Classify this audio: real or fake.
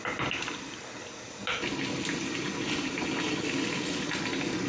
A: real